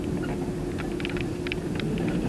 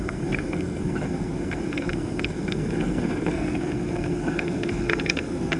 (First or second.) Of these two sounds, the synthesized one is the second